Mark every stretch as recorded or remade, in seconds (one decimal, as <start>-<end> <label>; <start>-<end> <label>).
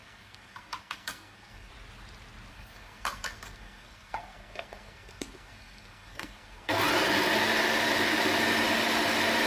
0.0-1.7 remade; 1.7-2.5 recorded; 2.5-6.8 remade; 6.8-9.5 recorded